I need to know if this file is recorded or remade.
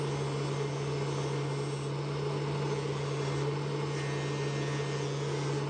recorded